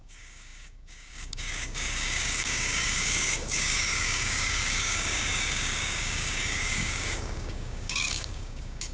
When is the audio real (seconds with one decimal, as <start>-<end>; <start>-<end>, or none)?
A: none